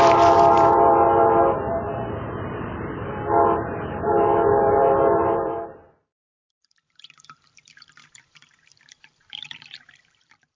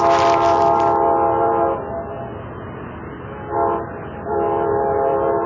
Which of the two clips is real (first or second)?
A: second